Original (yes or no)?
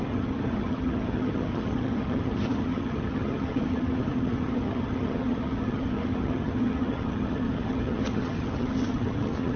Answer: no